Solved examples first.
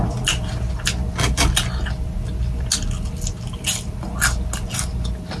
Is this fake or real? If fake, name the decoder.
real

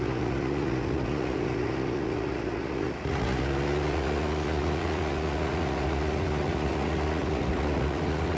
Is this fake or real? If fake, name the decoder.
fake, vocoder, Vocos